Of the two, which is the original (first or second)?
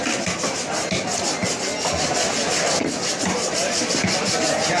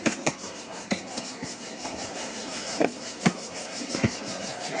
first